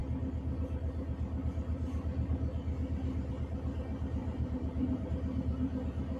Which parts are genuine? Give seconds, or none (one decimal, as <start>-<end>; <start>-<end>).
0.0-4.2; 5.1-6.2